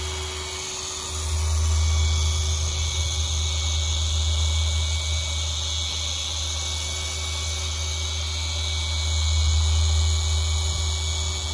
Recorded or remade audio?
recorded